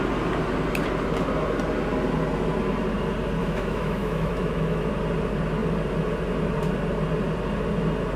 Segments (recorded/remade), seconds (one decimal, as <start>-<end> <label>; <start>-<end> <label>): 0.0-3.4 recorded; 3.4-4.9 remade; 4.9-8.2 recorded